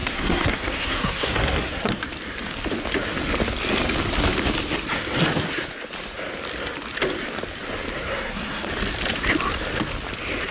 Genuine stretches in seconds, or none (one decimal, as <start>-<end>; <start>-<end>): 2.0-8.1; 8.7-10.5